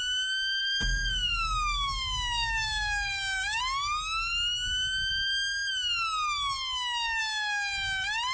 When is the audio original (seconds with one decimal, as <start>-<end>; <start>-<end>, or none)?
0.0-0.6; 3.6-8.3